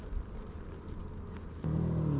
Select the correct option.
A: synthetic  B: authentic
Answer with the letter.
B